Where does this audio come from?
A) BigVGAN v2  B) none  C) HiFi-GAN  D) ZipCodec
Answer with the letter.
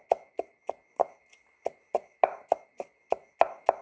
B